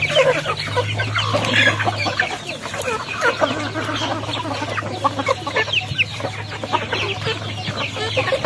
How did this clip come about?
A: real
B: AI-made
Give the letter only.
A